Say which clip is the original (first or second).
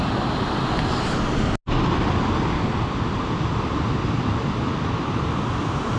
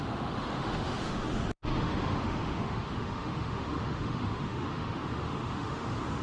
first